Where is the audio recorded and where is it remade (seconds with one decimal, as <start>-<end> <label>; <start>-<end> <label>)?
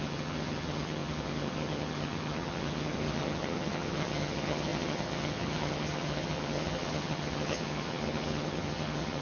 0.0-9.2 remade